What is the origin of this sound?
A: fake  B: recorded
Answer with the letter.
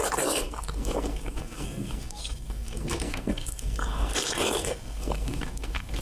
A